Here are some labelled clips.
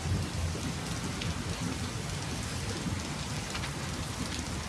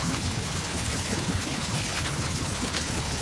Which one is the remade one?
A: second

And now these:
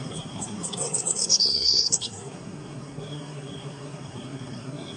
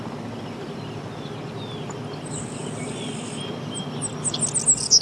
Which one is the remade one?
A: first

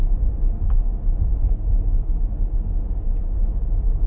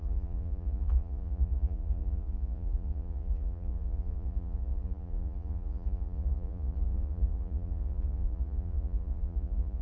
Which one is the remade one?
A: second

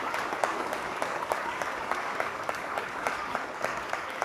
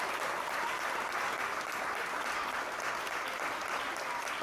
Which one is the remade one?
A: first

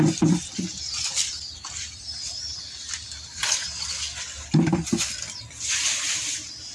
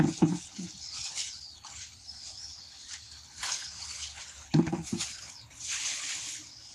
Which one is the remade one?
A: second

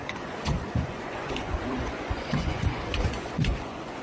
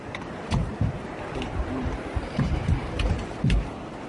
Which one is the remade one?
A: first